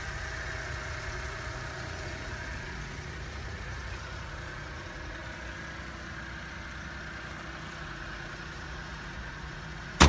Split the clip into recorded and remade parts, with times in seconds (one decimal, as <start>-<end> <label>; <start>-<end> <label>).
0.0-5.2 remade; 5.2-7.8 recorded; 7.8-10.1 remade